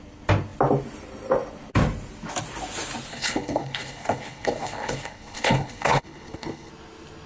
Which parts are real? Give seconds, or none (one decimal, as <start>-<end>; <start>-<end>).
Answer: 0.0-3.1; 6.7-7.3